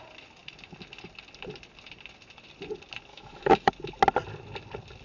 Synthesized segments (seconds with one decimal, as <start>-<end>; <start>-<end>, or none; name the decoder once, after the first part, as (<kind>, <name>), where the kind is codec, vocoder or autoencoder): 3.1-3.7 (autoencoder, DAC-VAE)